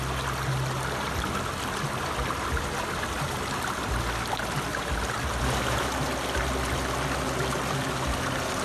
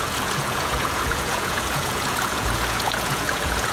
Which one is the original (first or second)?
first